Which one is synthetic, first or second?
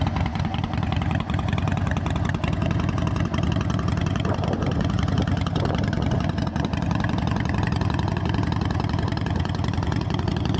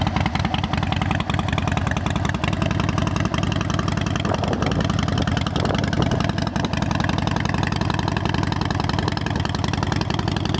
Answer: first